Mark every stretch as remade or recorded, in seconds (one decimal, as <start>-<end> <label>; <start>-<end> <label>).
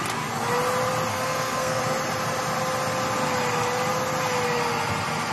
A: 0.0-1.1 recorded; 1.1-1.8 remade; 1.8-5.3 recorded